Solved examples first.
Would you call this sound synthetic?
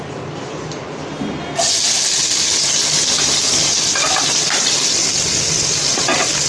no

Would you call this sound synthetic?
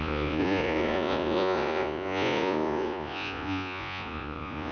yes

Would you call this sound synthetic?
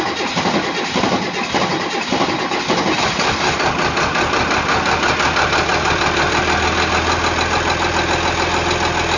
no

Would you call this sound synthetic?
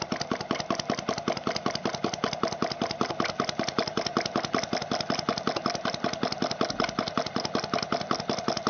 no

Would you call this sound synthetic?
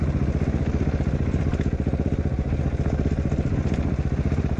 no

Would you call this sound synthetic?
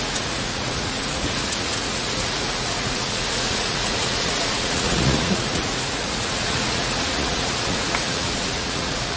yes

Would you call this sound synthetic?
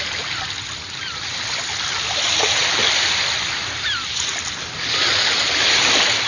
no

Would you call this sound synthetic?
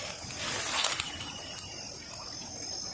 no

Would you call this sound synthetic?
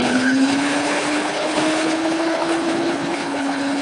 yes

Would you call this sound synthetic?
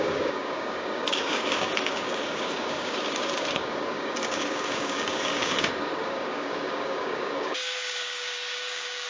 yes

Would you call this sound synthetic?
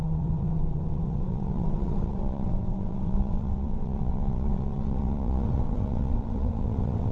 yes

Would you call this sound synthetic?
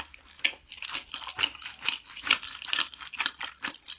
no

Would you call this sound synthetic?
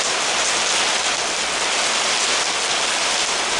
no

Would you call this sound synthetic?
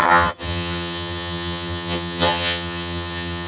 yes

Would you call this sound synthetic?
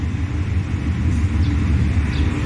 no